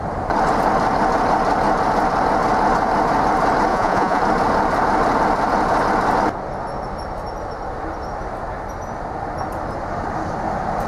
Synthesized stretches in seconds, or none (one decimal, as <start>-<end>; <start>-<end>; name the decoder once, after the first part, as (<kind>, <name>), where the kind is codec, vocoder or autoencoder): 3.7-4.2 (vocoder, Vocos)